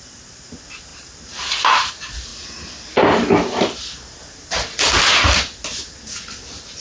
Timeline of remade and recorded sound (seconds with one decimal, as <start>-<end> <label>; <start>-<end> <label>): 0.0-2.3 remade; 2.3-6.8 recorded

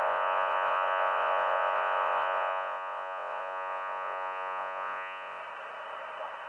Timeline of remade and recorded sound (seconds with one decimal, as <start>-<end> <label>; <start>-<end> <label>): 0.0-5.4 remade; 5.4-6.5 recorded

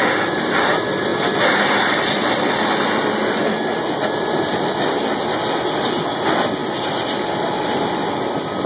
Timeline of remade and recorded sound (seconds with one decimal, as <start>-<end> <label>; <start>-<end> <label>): 0.0-8.7 recorded

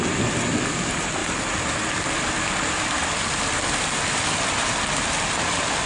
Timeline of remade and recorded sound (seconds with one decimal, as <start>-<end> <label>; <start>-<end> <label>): 0.0-1.2 recorded; 1.2-2.6 remade; 2.6-5.9 recorded

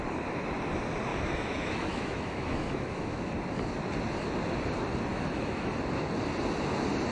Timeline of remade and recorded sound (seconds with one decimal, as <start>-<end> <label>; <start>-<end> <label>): 0.0-1.1 recorded; 1.1-3.3 remade; 3.3-5.1 recorded; 5.1-5.7 remade; 5.7-7.1 recorded

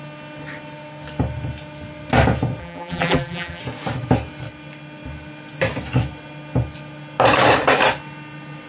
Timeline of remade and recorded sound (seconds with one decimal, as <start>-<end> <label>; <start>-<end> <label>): 0.0-2.6 recorded; 2.6-3.6 remade; 3.6-8.7 recorded